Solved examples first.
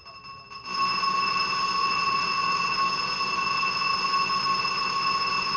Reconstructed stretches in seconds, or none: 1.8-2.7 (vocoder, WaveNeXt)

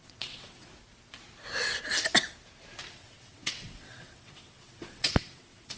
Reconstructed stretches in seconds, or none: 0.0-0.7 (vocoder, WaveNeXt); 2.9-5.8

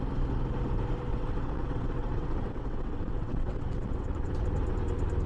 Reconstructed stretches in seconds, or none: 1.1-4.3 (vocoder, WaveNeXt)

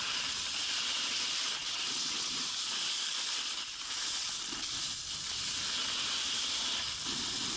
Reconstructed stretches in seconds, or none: 1.6-2.5 (vocoder, WaveNeXt)

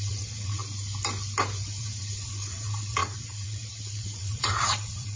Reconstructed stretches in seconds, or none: 0.0-0.6 (vocoder, WaveNeXt); 1.7-5.2

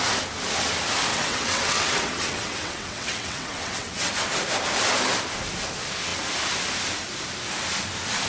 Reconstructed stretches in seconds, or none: 1.1-4.1 (vocoder, WaveNeXt)

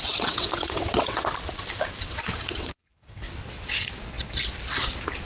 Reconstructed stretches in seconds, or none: 0.0-1.3 (vocoder, WaveNeXt); 2.0-3.9